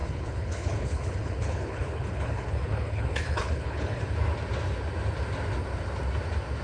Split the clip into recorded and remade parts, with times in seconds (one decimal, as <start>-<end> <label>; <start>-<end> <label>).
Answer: 0.0-4.0 remade; 4.0-6.6 recorded

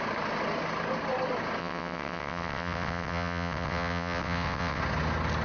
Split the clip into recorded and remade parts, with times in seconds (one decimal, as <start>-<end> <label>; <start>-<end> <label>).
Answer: 0.0-1.6 recorded; 1.6-4.8 remade; 4.8-5.4 recorded

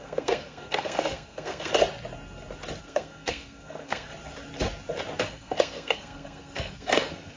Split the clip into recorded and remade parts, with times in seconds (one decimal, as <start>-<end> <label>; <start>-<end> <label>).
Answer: 0.0-1.7 remade; 1.7-2.8 recorded; 2.8-4.1 remade; 4.1-5.2 recorded; 5.2-7.4 remade